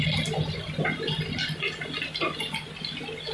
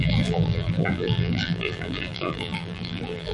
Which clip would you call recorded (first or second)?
first